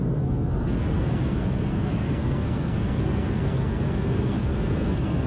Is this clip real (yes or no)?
no